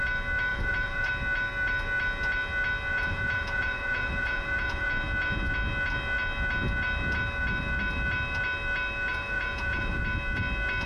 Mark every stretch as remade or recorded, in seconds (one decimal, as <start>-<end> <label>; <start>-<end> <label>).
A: 0.0-0.5 recorded; 0.5-1.1 remade; 1.1-2.9 recorded; 2.9-4.9 remade; 4.9-9.1 recorded; 9.1-10.0 remade; 10.0-10.9 recorded